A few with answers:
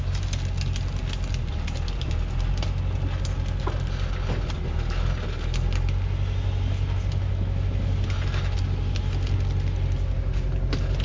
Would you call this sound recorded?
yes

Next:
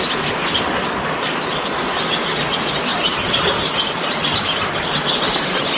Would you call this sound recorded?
yes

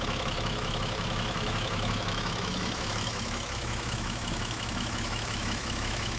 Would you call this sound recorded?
no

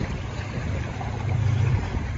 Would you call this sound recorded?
no